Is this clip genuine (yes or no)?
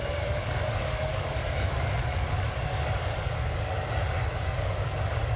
no